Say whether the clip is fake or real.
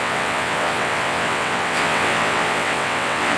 fake